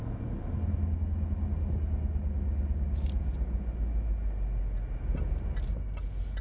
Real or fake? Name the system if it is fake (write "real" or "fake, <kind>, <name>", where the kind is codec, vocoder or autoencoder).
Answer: real